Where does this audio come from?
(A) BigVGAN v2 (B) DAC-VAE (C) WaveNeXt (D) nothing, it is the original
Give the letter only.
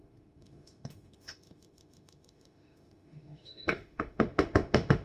B